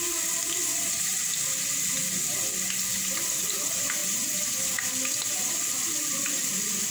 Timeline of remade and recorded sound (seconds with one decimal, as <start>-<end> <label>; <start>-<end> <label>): 0.0-6.9 recorded